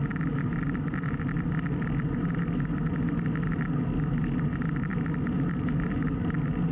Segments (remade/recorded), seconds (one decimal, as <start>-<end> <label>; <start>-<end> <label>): 0.0-6.7 recorded